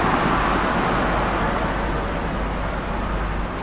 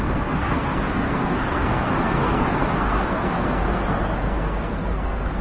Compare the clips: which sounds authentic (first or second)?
first